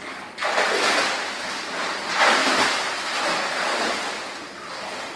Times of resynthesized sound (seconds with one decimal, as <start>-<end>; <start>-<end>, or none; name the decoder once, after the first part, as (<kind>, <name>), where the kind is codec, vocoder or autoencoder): none